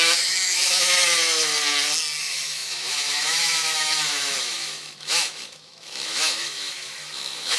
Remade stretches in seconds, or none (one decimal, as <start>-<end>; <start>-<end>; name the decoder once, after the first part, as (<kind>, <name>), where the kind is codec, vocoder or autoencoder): 0.0-1.5 (autoencoder, DAC-VAE); 2.2-7.6